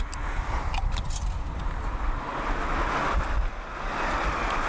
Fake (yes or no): no